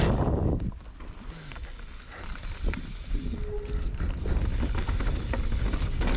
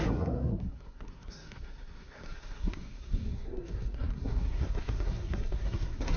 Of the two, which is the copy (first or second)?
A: second